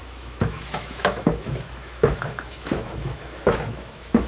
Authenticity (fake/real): fake